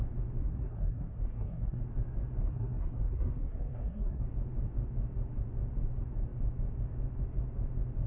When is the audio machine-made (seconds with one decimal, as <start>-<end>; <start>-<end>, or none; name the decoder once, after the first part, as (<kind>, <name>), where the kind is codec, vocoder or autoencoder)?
0.4-1.8 (codec, SNAC); 2.4-4.2